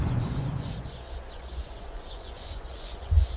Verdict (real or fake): fake